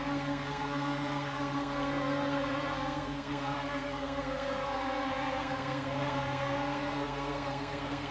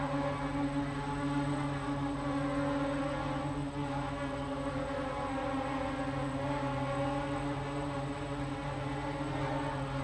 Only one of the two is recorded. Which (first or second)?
second